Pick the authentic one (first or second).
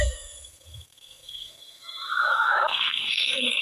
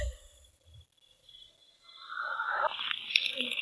second